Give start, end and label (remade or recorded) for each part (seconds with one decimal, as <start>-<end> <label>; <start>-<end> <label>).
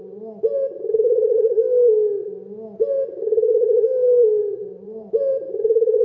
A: 0.0-4.4 recorded; 4.4-5.1 remade; 5.1-6.0 recorded